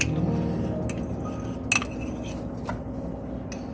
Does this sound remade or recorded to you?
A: recorded